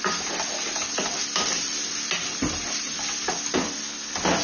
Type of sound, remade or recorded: recorded